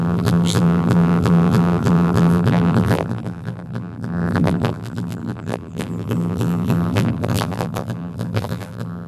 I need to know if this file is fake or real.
fake